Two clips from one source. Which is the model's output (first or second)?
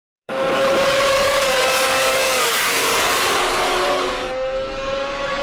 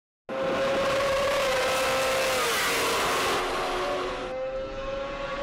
first